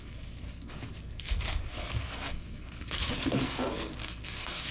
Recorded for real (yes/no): no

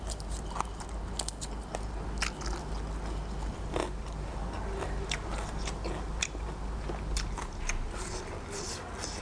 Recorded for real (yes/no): yes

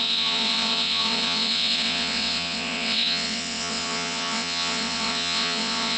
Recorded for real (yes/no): no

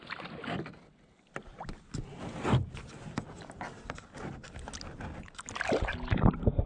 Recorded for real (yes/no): yes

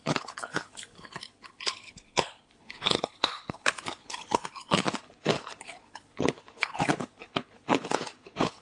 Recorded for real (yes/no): no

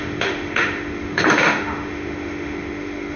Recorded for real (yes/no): no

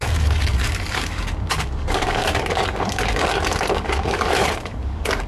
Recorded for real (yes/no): no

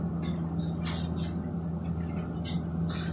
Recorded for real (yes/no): yes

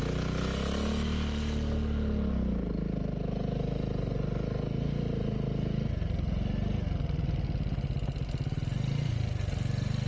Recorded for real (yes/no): yes